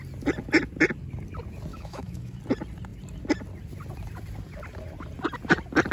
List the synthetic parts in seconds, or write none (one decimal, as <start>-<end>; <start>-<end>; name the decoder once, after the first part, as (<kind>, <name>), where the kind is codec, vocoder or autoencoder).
1.7-2.4 (autoencoder, DAC-VAE)